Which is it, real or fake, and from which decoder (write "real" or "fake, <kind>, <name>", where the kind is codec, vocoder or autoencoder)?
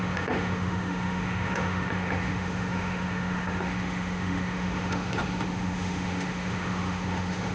fake, autoencoder, DAC-VAE